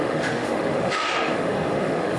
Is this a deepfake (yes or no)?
yes